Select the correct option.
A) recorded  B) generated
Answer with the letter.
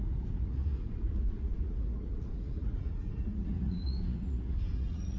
B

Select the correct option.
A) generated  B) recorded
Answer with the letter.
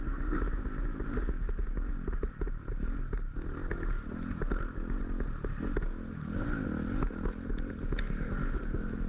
B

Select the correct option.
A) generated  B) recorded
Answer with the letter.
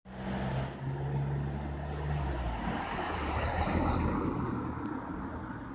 B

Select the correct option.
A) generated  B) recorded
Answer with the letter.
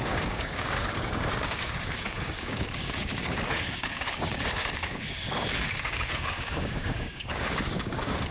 A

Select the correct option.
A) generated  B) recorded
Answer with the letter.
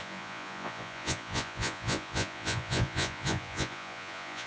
A